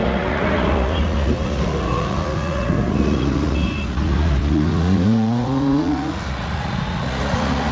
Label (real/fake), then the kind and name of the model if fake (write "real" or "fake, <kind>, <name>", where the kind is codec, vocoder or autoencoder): fake, vocoder, Vocos